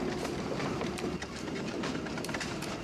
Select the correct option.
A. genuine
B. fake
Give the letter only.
B